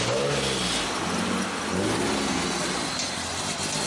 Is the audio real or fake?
real